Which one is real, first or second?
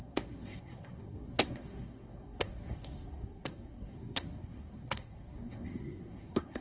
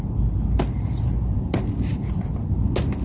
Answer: second